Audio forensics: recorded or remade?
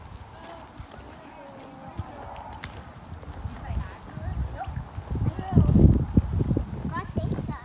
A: recorded